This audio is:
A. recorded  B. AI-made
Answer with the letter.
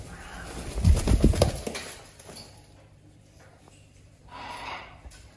B